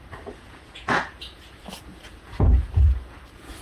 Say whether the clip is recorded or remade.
remade